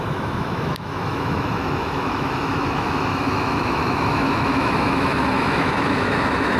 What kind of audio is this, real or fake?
fake